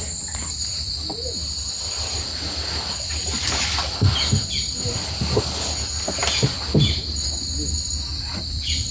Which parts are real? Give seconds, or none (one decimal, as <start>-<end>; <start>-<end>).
0.0-8.9